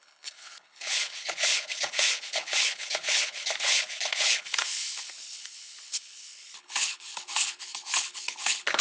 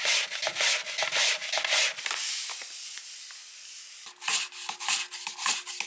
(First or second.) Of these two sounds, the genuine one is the second